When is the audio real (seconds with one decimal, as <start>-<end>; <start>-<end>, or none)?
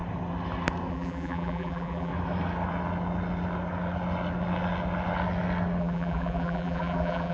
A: 0.0-0.9; 2.1-5.8